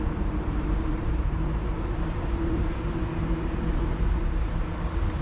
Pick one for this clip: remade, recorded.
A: remade